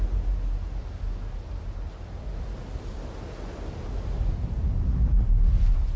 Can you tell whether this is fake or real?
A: real